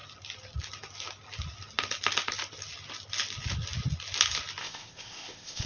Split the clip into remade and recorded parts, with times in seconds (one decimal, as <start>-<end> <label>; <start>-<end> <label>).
0.0-4.6 recorded; 4.6-5.7 remade